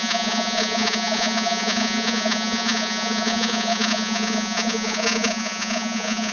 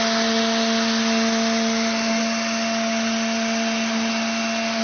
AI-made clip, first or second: first